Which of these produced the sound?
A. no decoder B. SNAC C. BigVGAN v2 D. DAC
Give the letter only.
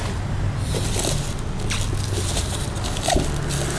A